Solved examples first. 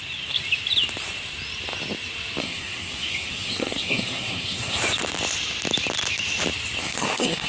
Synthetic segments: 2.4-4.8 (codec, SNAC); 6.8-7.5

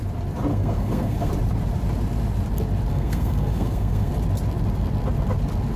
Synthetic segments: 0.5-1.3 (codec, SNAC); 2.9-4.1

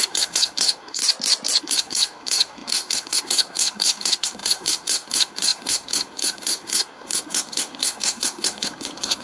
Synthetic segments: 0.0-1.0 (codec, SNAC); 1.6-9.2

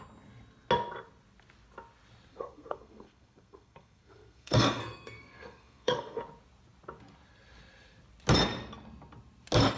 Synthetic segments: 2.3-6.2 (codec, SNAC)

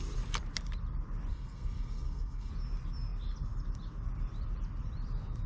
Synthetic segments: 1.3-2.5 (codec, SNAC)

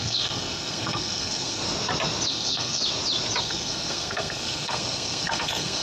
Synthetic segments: 0.0-1.6 (codec, SNAC); 2.3-2.8; 3.4-5.8

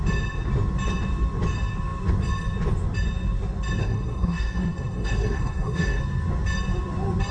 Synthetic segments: 3.8-6.0 (codec, SNAC)

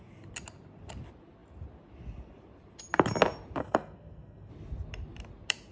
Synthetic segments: 3.6-4.5 (codec, SNAC)